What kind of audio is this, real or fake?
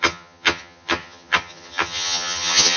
fake